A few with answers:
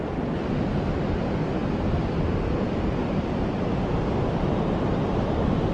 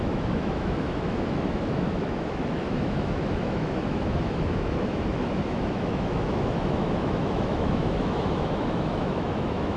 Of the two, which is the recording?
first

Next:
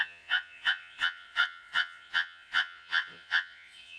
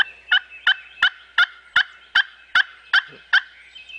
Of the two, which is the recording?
second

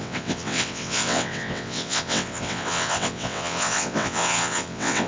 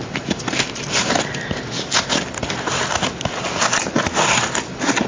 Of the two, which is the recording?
second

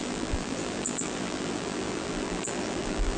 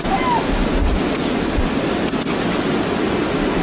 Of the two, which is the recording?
second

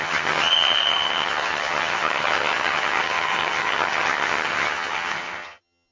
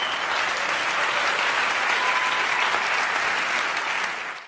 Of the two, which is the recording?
second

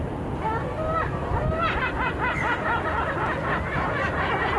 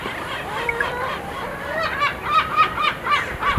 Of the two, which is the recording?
first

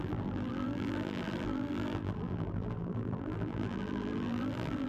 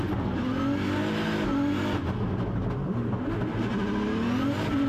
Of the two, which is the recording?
second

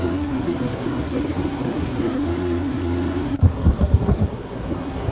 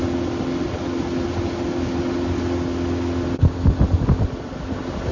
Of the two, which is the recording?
second